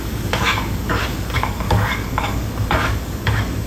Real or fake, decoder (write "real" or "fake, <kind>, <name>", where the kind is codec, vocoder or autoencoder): fake, codec, DAC